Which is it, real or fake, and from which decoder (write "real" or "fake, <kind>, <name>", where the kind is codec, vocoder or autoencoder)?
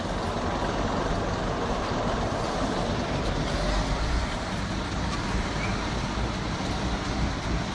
real